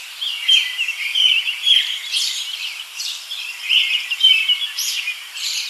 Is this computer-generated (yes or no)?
yes